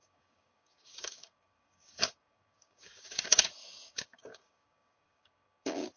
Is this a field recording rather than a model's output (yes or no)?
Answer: no